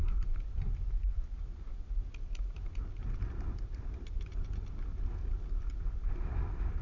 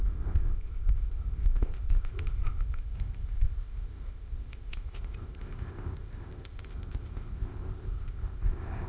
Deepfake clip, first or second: second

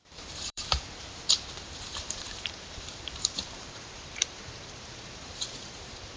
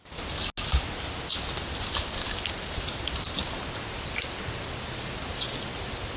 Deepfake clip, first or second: first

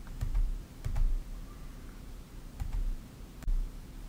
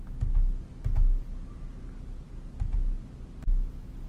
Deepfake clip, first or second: first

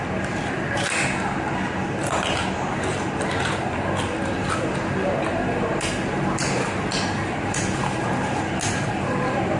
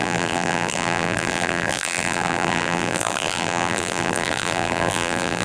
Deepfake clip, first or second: second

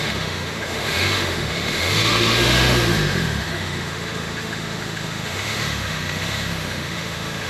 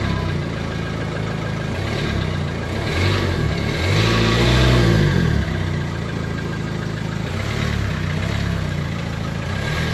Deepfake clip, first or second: first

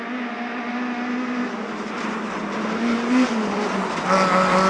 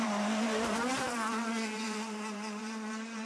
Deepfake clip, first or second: second